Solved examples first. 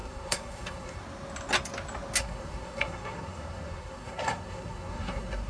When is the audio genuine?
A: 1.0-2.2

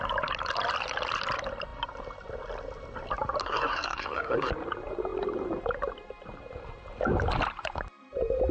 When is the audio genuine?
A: 0.0-3.4; 4.5-8.5

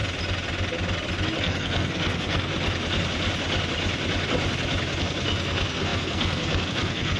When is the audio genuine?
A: 0.0-1.4; 2.5-5.0

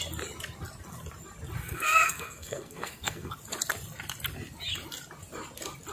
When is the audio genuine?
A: 0.0-1.6; 3.3-5.9

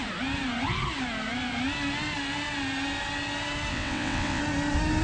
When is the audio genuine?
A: 0.0-3.7; 4.4-5.0

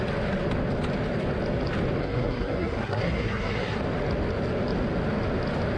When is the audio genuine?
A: 0.0-2.0; 3.8-5.8

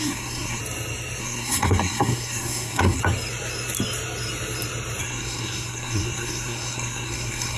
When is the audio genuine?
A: 0.6-1.2; 3.0-5.0